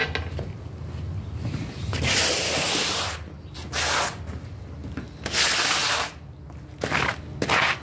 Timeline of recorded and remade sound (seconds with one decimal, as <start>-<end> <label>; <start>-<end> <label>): 0.0-7.8 recorded